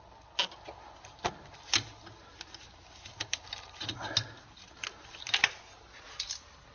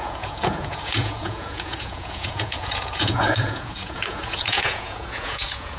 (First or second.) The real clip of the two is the first